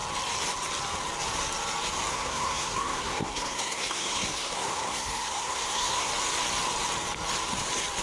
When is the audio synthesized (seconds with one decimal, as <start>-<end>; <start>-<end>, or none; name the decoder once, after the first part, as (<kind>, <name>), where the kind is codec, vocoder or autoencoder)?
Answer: 2.1-6.1 (codec, SNAC)